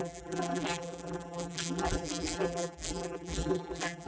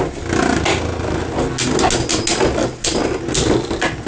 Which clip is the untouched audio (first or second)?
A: second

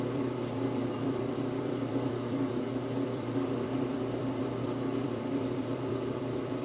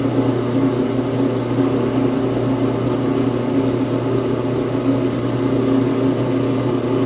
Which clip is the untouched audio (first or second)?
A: second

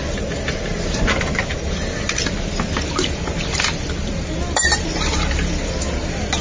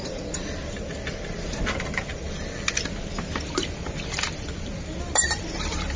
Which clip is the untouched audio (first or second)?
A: first